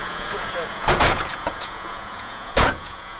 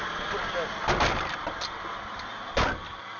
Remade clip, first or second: first